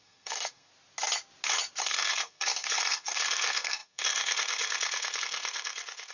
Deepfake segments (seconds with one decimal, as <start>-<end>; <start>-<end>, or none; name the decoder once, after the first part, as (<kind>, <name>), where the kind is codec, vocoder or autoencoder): 0.0-0.7 (codec, SNAC); 1.8-6.1